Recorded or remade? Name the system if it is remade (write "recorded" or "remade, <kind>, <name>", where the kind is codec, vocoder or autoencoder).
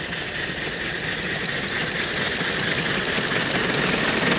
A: recorded